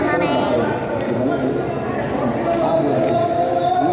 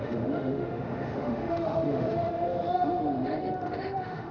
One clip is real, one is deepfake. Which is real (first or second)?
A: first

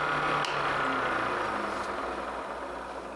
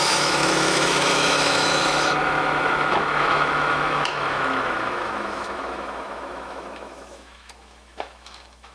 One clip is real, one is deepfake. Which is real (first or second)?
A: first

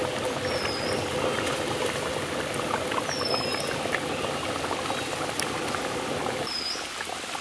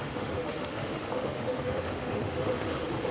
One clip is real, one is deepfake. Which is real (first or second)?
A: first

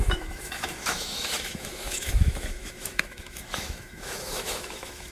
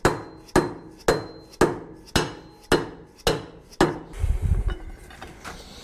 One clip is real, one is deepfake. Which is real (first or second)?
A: second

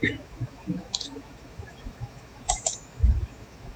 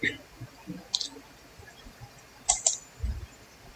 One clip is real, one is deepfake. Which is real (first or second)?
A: second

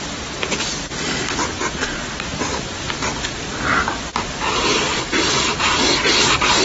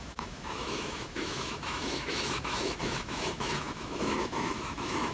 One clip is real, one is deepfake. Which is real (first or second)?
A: first